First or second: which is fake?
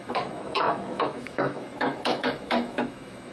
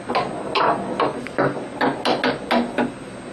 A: first